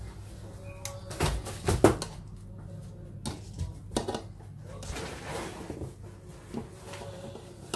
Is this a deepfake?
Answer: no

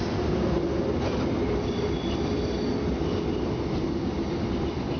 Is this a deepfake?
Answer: no